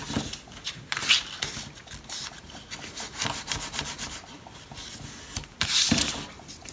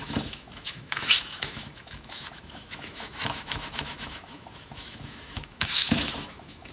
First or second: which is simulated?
second